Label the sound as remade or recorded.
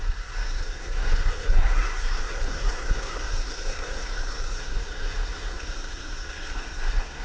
remade